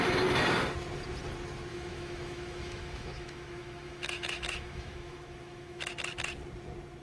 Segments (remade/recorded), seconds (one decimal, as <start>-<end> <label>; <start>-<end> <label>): 0.0-1.7 recorded; 1.7-5.9 remade; 5.9-7.0 recorded